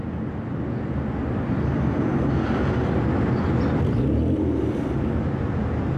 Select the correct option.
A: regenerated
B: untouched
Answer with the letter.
B